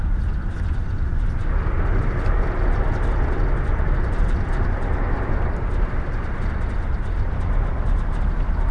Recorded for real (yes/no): yes